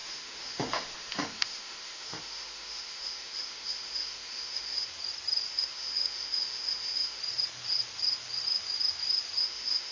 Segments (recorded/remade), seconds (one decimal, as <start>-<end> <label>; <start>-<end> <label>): 0.0-4.9 remade; 4.9-5.5 recorded; 5.5-7.2 remade; 7.2-9.4 recorded; 9.4-9.9 remade